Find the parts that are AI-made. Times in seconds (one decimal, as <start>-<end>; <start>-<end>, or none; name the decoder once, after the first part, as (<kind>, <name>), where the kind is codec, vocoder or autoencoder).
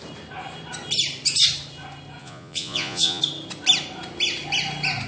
2.2-3.2 (vocoder, Vocos)